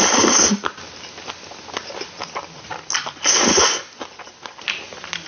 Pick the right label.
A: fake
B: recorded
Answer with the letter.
B